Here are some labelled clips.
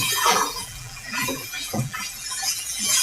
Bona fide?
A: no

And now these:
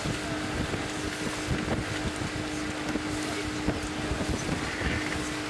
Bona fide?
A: yes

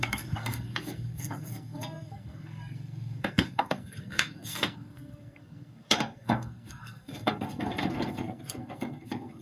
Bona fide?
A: no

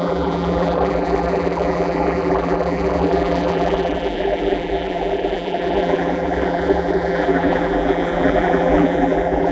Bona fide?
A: no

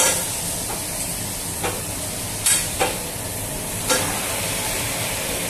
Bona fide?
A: yes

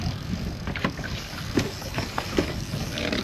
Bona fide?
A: no